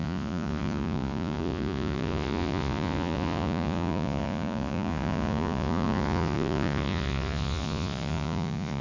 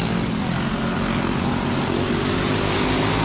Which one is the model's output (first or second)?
first